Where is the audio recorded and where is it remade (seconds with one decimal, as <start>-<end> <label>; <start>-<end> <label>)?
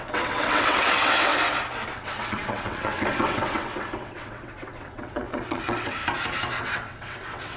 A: 0.0-1.3 remade; 1.3-1.9 recorded; 1.9-6.0 remade; 6.0-6.6 recorded; 6.6-7.6 remade